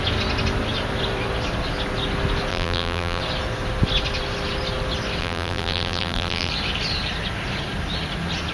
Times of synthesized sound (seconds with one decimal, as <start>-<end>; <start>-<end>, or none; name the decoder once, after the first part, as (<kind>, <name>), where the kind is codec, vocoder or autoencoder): 2.5-3.2 (vocoder, BigVGAN v2); 5.2-6.5